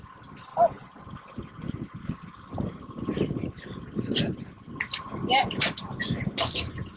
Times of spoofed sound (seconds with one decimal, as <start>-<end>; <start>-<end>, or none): none